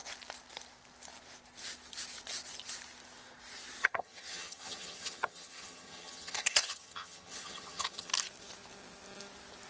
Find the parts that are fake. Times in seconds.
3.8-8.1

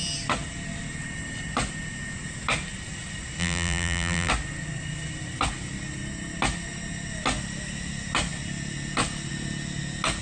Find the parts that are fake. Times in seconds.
3.4-4.3